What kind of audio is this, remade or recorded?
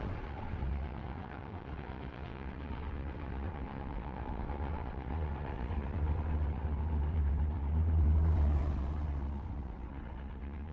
remade